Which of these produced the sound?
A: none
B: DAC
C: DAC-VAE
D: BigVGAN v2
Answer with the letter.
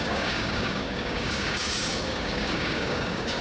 B